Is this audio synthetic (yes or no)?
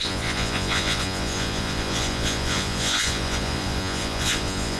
yes